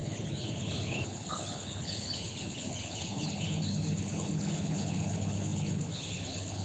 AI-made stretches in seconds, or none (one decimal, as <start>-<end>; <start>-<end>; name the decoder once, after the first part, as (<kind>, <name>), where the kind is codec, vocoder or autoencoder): 0.0-6.6 (codec, HILCodec)